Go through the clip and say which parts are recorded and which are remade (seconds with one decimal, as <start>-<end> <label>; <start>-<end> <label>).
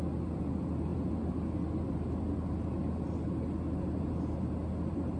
0.0-5.2 recorded